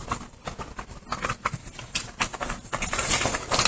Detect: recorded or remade recorded